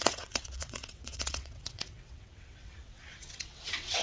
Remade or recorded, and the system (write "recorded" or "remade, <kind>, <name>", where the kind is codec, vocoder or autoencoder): remade, vocoder, WaveNeXt